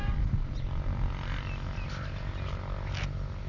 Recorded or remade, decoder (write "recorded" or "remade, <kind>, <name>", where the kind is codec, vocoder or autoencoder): recorded